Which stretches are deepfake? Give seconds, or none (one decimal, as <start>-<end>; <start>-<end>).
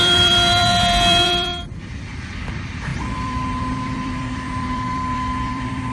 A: 0.0-5.9